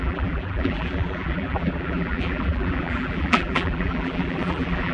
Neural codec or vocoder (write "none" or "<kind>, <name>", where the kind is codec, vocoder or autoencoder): vocoder, BigVGAN v2